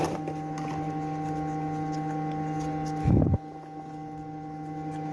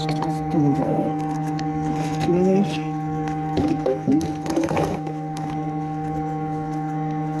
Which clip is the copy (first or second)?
second